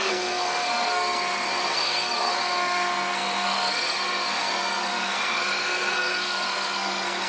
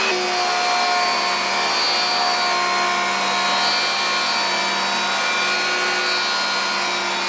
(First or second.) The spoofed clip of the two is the first